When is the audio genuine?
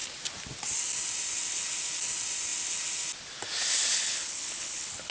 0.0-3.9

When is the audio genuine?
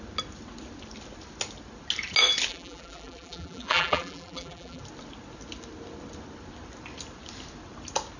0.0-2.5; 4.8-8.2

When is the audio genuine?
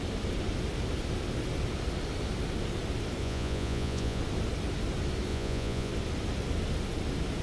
0.0-3.2; 4.2-5.3; 5.9-7.4